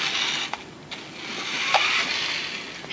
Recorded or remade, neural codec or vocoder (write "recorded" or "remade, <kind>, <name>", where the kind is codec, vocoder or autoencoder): recorded